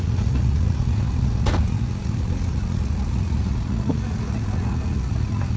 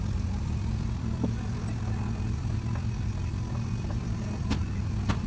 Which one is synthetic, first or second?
first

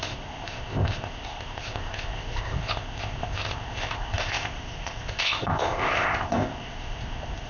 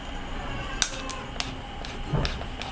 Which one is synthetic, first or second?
first